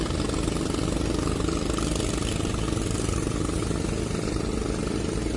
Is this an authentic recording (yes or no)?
yes